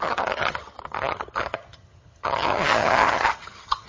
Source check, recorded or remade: remade